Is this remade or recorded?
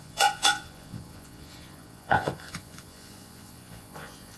remade